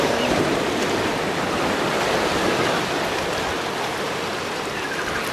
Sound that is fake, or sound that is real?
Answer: real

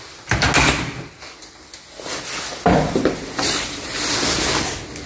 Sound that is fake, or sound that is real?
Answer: real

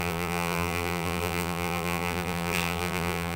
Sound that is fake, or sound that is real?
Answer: fake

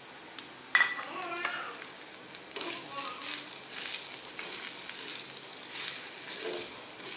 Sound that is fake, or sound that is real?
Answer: real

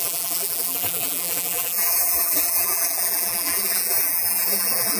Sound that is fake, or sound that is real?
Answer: fake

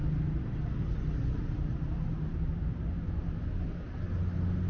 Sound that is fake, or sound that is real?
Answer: real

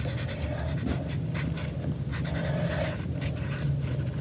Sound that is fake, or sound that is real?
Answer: real